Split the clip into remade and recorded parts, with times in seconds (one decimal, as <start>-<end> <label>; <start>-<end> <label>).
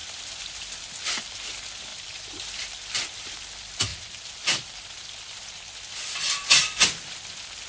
0.0-1.3 remade; 1.3-1.9 recorded; 1.9-3.4 remade; 3.4-7.7 recorded